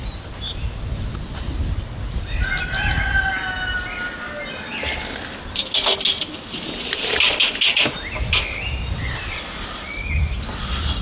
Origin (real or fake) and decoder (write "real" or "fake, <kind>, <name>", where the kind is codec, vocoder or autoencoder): real